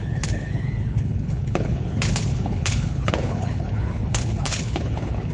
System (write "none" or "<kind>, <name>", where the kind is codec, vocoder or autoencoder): codec, HILCodec